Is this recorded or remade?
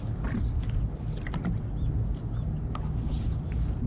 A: recorded